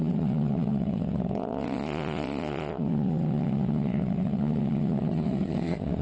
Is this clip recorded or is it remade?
remade